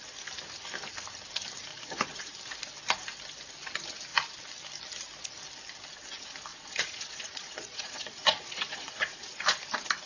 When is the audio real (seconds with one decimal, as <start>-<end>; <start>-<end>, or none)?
0.0-1.7; 2.3-6.5; 9.6-10.1